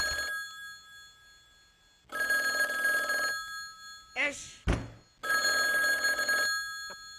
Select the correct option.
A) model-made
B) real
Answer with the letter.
B